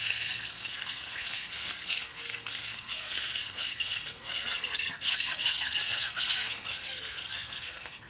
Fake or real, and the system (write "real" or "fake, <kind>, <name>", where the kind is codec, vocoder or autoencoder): fake, codec, SNAC